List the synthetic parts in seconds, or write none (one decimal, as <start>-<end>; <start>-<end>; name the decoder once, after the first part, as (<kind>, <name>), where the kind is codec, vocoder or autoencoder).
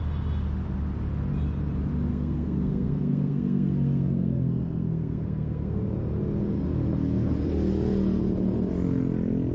2.1-5.8 (codec, SNAC)